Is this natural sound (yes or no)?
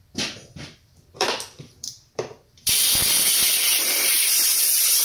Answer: no